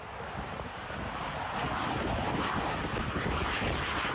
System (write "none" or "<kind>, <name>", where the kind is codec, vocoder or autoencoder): none